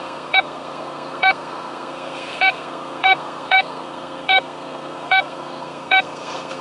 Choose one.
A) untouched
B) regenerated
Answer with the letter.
B